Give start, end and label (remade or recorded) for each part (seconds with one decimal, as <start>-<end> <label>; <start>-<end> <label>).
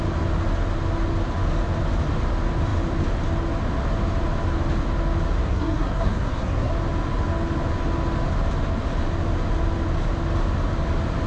0.0-5.4 recorded; 5.4-6.7 remade; 6.7-11.3 recorded